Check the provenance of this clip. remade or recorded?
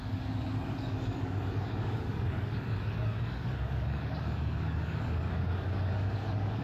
remade